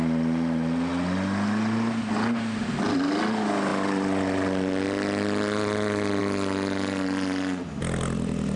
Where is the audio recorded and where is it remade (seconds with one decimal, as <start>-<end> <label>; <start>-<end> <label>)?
0.0-8.6 recorded